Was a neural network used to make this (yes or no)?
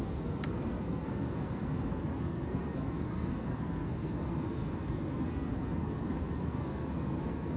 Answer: yes